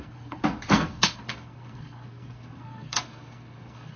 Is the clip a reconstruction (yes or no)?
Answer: yes